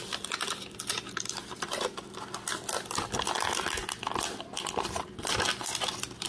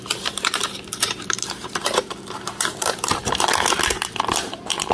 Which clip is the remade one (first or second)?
second